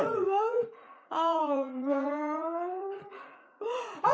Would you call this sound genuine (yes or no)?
no